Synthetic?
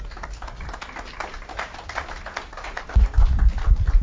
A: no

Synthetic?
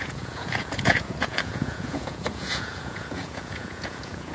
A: yes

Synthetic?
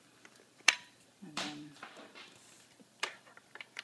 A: yes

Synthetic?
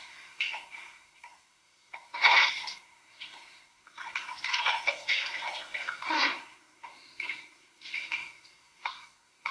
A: yes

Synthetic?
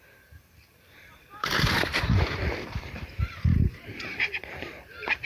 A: yes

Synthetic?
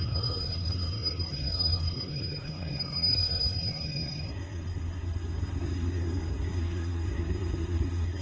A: yes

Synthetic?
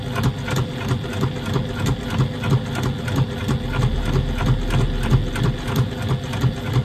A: no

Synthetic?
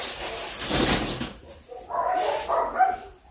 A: no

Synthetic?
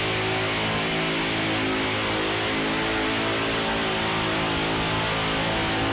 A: no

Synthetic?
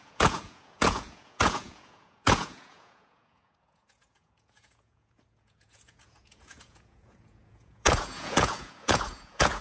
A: yes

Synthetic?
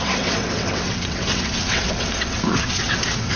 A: yes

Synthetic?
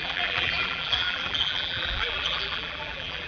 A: yes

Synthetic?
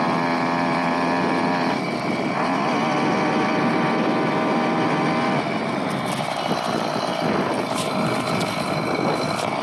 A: no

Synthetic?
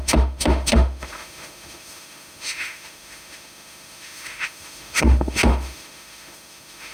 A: yes